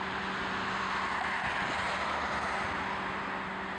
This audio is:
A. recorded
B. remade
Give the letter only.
A